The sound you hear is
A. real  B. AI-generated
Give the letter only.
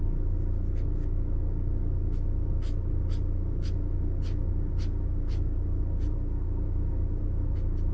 A